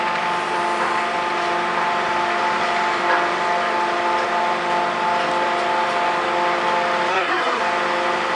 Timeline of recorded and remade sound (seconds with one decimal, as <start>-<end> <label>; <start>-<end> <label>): 0.0-7.1 recorded; 7.1-7.6 remade; 7.6-8.3 recorded